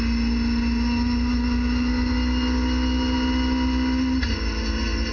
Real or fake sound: real